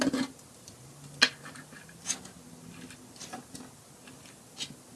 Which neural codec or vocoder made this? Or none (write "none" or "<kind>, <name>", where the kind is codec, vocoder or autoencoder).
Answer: none